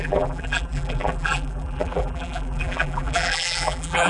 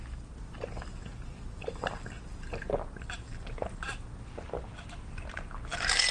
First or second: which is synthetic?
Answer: first